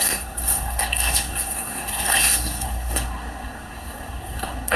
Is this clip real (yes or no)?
no